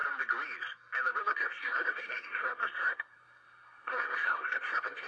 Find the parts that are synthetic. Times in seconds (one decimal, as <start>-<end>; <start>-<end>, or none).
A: 1.2-5.1